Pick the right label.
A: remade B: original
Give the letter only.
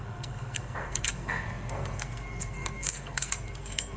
A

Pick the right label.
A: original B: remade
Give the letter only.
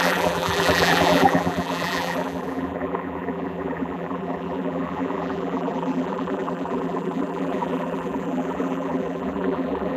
B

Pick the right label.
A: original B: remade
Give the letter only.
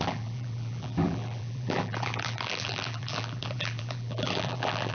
B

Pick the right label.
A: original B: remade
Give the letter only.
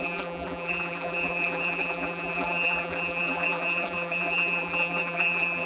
B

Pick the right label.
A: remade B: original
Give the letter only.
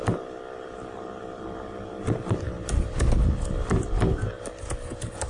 B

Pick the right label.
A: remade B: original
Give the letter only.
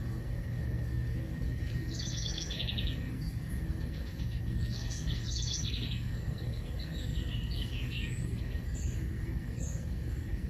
A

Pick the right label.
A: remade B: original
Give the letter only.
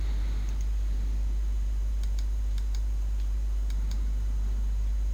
A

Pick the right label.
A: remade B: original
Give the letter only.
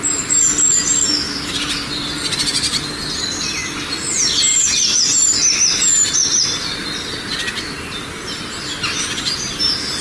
B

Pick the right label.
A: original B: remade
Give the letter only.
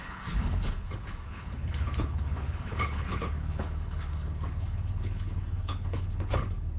B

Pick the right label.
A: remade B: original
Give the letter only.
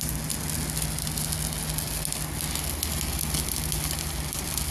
B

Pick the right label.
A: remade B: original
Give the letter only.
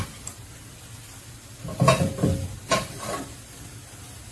B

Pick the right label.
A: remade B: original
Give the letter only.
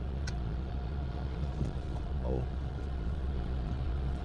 A